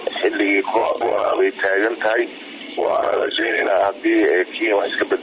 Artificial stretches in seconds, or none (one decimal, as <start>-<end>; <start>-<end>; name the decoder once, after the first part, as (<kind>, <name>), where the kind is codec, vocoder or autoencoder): 0.8-1.4 (vocoder, HiFi-GAN); 2.6-3.7